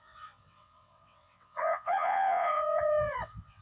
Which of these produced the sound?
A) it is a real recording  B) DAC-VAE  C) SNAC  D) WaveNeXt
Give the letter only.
D